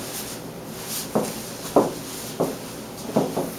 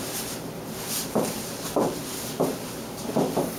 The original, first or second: first